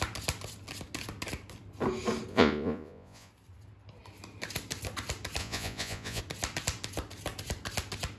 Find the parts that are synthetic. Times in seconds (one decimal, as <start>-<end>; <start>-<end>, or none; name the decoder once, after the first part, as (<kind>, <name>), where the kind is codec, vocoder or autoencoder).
2.3-3.3 (vocoder, Vocos); 5.4-6.2